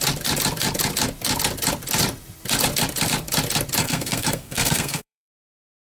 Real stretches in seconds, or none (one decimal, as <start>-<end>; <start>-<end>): 0.0-3.8; 5.3-5.9